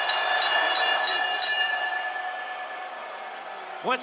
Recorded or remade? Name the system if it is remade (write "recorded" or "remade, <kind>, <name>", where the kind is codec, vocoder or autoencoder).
remade, vocoder, BigVGAN v2